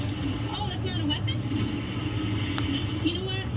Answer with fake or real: real